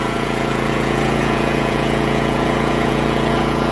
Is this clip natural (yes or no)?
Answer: no